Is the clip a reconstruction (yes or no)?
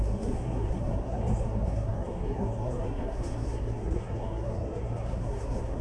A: yes